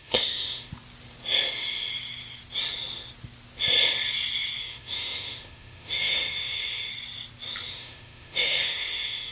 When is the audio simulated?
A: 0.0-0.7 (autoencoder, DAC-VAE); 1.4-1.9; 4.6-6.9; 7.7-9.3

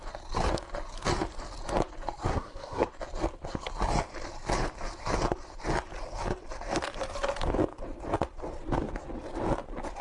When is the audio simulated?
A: 2.3-2.9 (codec, SNAC)

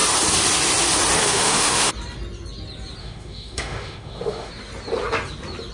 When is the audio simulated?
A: 1.2-1.9 (autoencoder, DAC-VAE); 3.0-4.5

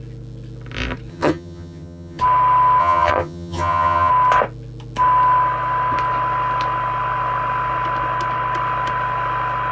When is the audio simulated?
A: 1.1-2.2 (vocoder, HiFi-GAN); 2.8-4.1

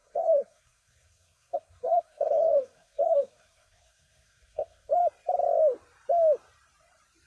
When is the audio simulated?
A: 0.0-5.0 (codec, SNAC)